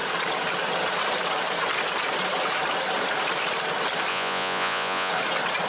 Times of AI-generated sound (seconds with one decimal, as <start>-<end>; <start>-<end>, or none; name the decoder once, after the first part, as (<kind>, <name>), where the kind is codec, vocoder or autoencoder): 4.1-5.1 (vocoder, Vocos)